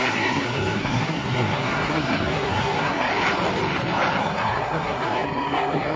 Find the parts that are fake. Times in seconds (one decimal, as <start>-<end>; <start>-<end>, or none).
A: 0.0-3.1; 4.2-6.0